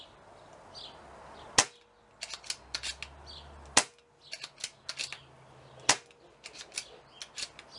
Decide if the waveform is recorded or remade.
recorded